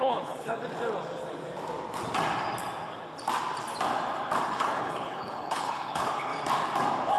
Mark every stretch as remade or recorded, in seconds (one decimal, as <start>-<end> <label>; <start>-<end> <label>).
0.0-0.6 remade; 0.6-4.5 recorded; 4.5-6.3 remade; 6.3-7.2 recorded